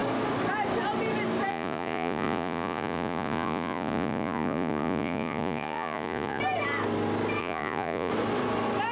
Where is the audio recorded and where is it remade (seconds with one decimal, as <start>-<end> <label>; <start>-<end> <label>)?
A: 0.0-1.5 recorded; 1.5-6.4 remade; 6.4-7.4 recorded; 7.4-8.1 remade; 8.1-8.9 recorded